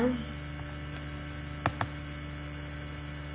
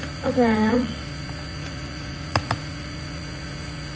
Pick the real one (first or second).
first